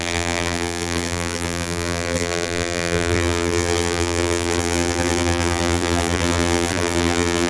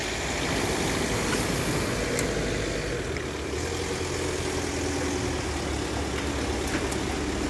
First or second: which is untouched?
second